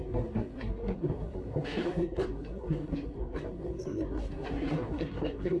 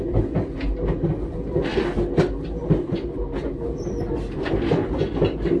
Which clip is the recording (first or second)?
second